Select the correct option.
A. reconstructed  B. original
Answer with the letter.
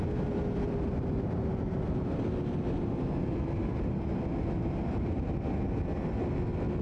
B